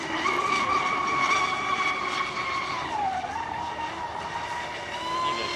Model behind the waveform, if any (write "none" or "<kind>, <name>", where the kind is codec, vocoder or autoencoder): none